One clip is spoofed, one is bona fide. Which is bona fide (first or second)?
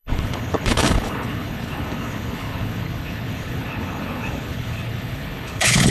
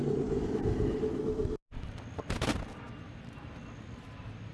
second